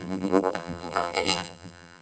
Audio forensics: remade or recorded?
remade